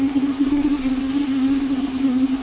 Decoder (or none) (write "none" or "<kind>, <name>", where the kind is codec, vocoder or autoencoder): codec, SNAC